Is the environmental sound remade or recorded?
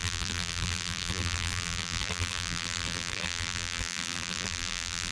remade